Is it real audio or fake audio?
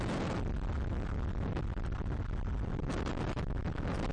real